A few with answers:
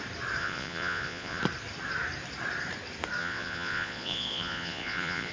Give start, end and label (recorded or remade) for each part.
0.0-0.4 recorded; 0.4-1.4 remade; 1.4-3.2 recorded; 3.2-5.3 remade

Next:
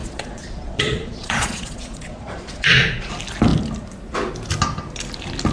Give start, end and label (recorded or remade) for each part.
0.0-3.1 remade; 3.1-5.5 recorded